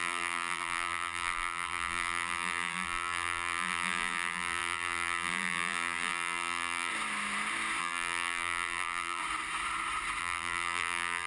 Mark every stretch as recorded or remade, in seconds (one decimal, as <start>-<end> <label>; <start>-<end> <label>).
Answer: 0.0-6.9 remade; 6.9-7.8 recorded; 7.8-9.2 remade; 9.2-10.2 recorded; 10.2-11.3 remade